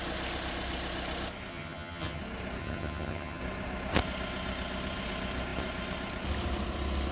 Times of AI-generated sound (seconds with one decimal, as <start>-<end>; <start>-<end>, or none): 1.5-2.2; 2.6-3.4